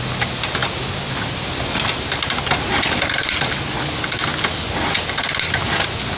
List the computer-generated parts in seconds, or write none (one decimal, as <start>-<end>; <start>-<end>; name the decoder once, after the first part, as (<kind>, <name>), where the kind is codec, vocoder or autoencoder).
none